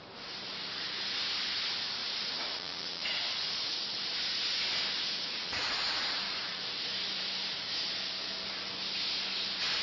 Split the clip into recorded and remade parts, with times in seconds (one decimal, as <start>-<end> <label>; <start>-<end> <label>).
0.0-2.0 recorded; 2.0-3.9 remade; 3.9-5.1 recorded; 5.1-6.6 remade; 6.6-9.8 recorded